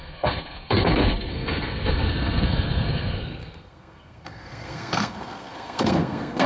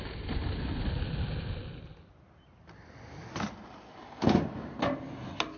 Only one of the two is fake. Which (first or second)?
first